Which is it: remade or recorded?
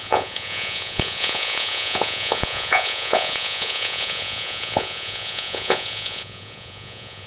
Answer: remade